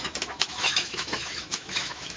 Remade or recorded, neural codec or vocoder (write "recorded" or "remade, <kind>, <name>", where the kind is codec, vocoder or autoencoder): remade, autoencoder, DAC-VAE